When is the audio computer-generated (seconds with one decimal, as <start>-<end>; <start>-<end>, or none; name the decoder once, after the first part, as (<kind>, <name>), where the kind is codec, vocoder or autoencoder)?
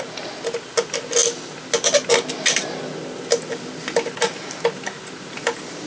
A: none